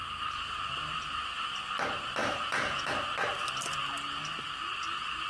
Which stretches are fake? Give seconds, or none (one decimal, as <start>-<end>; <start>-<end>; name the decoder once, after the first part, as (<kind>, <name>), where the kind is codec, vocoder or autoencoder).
2.2-2.9 (vocoder, Vocos)